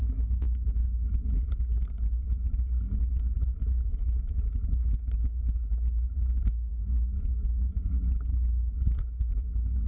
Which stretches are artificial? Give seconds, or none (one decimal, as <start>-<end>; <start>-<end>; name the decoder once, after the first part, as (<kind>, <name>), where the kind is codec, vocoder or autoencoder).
0.0-0.8 (autoencoder, DAC-VAE); 3.4-3.9; 4.5-6.7; 7.2-9.9